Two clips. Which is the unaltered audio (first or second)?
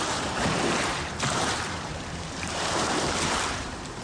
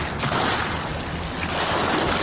second